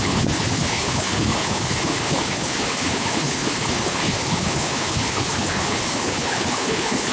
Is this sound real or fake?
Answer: fake